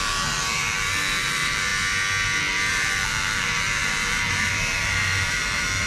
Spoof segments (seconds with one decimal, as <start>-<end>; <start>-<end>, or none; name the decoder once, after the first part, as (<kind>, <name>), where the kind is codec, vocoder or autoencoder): 0.0-1.7 (vocoder, BigVGAN v2); 2.7-5.9